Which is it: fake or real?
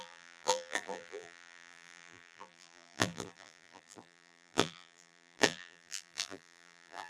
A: fake